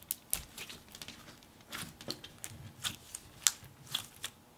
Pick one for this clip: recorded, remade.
recorded